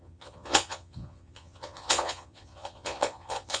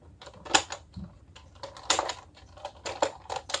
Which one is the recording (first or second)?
second